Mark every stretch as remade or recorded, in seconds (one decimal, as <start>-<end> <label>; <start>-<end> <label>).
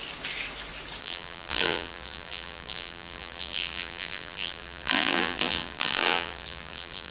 0.0-1.0 recorded; 1.0-7.1 remade